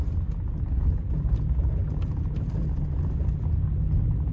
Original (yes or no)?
yes